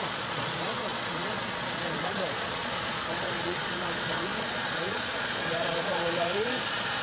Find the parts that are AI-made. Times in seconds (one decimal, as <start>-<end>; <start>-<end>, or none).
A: 0.0-7.0